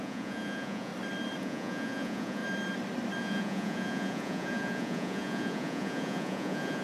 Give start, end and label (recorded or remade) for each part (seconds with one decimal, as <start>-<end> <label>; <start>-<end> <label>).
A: 0.0-0.9 remade; 0.9-1.4 recorded; 1.4-2.4 remade; 2.4-3.2 recorded; 3.2-6.8 remade